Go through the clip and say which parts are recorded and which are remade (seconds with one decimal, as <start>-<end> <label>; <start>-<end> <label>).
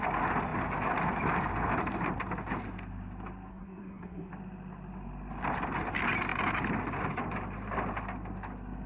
0.0-3.5 recorded; 3.5-4.3 remade; 4.3-8.9 recorded